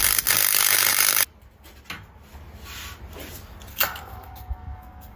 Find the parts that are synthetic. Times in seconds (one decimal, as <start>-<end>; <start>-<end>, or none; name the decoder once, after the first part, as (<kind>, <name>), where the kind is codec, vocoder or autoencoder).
3.7-5.2 (codec, SNAC)